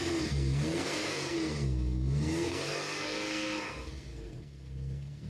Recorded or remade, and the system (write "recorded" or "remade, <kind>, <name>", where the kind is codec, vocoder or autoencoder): remade, codec, SNAC